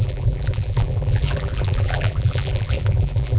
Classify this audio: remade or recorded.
remade